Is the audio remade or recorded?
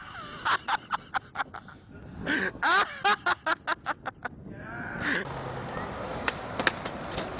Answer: recorded